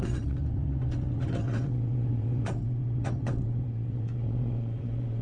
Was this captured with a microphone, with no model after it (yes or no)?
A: no